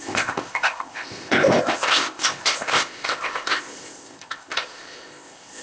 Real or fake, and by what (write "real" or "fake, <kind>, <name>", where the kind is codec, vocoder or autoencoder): fake, codec, ZipCodec